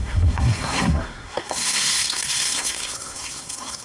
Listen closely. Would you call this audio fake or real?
fake